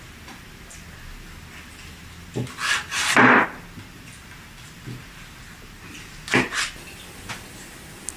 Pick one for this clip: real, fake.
real